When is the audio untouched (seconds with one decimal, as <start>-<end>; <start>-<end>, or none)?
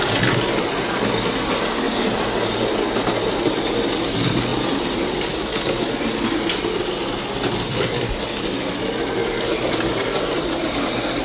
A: 0.0-11.2